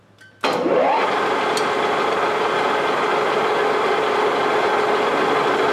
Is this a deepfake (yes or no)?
no